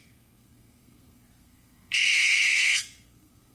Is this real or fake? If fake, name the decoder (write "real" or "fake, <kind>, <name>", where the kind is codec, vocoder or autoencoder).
fake, codec, SNAC